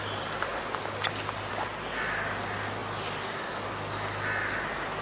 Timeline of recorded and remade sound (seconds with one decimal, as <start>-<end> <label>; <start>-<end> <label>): 0.0-5.0 recorded